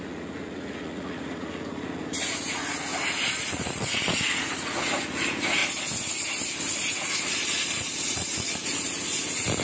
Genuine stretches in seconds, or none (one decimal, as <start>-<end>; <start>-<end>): 2.9-3.4; 5.6-6.8